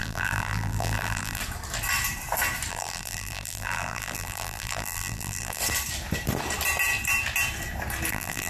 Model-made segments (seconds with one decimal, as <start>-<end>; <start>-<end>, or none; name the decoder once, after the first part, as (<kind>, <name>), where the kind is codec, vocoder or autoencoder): 0.0-1.4 (vocoder, BigVGAN v2); 2.7-5.6; 8.1-8.5